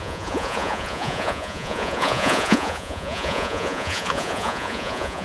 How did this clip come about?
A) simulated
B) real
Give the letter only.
A